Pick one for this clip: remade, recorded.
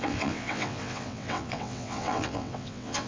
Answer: remade